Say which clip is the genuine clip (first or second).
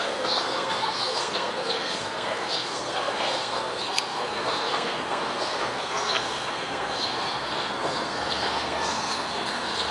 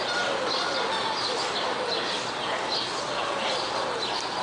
second